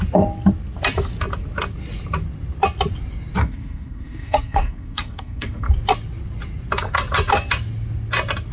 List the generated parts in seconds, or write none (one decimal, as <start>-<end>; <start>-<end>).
3.4-5.7